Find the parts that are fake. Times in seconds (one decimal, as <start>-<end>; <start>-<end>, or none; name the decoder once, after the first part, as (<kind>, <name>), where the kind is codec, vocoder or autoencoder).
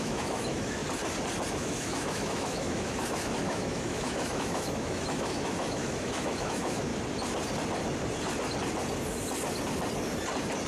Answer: 0.0-0.8 (autoencoder, DAC-VAE); 1.5-6.9